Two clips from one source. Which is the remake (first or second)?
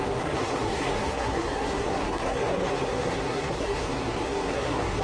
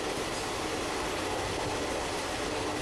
first